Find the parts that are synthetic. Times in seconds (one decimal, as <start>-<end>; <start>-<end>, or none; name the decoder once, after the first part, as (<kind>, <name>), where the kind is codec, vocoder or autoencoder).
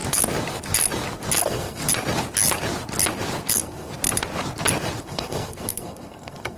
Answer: 1.4-1.8 (codec, SNAC); 3.5-3.9; 5.0-6.6